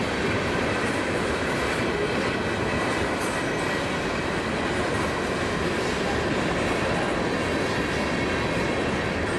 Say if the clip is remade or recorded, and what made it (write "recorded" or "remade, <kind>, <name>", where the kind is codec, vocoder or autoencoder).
recorded